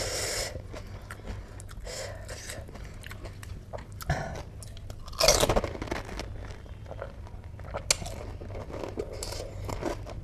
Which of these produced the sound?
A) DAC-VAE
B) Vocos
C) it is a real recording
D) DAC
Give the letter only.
C